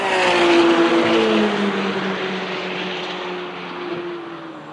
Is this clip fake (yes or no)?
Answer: no